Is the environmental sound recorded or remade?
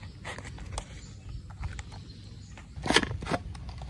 recorded